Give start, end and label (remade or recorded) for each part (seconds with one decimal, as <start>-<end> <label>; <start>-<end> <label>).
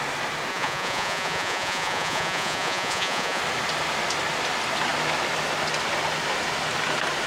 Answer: 0.0-0.5 recorded; 0.5-3.4 remade; 3.4-7.3 recorded